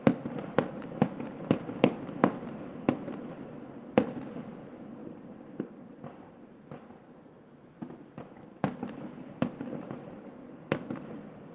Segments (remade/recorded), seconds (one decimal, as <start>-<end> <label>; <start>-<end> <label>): 0.0-11.5 recorded